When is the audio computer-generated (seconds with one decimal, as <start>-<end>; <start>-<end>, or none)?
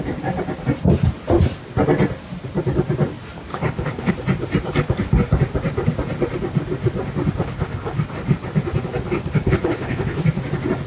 3.5-4.1; 7.4-8.0; 9.3-10.2